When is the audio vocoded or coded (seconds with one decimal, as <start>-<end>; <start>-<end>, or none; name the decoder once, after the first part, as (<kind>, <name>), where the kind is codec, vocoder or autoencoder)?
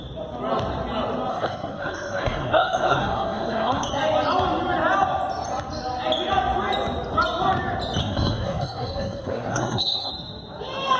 1.3-3.9 (codec, SNAC); 8.0-10.1